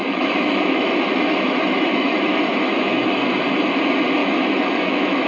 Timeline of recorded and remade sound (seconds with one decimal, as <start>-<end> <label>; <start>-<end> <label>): 0.0-3.2 remade; 3.2-4.2 recorded; 4.2-5.3 remade